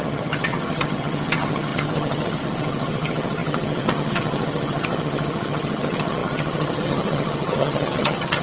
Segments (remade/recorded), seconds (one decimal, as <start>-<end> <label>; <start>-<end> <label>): 0.0-8.4 remade